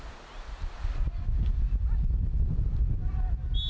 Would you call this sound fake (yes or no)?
no